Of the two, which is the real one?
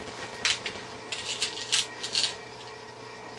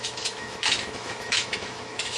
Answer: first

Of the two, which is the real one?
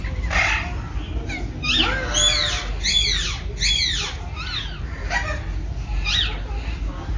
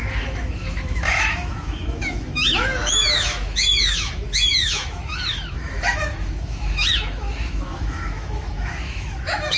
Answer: first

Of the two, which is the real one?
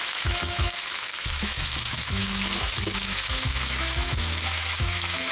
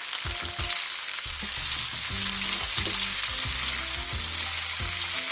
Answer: second